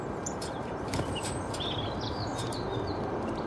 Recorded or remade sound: remade